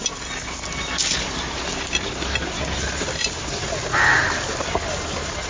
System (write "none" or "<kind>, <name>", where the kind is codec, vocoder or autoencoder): none